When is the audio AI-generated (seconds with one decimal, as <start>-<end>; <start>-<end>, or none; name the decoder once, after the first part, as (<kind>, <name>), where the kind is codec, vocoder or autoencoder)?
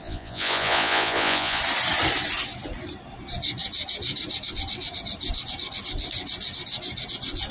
0.0-1.6 (vocoder, Vocos)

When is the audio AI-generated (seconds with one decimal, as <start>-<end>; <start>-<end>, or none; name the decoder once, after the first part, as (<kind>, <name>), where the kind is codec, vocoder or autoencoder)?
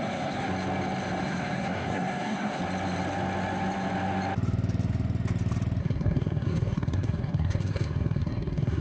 0.0-0.5 (codec, SNAC); 1.2-2.6; 5.8-8.8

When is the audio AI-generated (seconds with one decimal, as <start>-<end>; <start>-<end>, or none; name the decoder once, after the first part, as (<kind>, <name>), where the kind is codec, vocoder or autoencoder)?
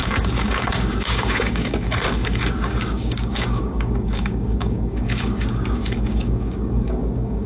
0.0-7.5 (codec, DAC)